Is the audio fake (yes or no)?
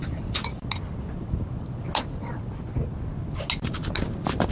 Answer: no